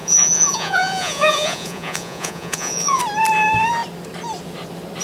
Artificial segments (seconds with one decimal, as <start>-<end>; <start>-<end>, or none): 0.0-3.0